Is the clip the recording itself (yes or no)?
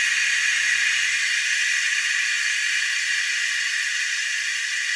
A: yes